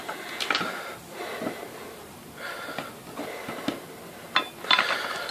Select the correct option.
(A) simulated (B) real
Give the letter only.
B